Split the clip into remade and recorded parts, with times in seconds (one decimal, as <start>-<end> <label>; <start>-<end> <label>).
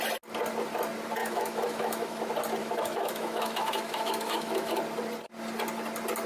0.0-1.2 recorded; 1.2-2.2 remade; 2.2-2.6 recorded; 2.6-4.8 remade; 4.8-6.3 recorded